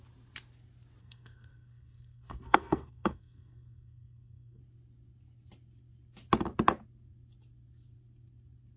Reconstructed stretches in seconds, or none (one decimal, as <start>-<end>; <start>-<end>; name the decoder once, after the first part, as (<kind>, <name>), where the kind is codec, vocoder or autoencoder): 1.0-4.6 (codec, SNAC)